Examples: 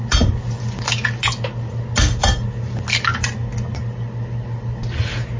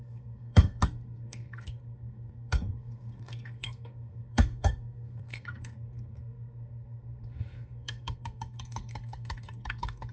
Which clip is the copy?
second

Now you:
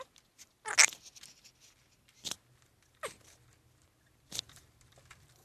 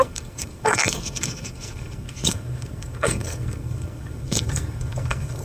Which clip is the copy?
second